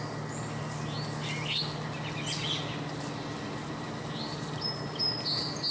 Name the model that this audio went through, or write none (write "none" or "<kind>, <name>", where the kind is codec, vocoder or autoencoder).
none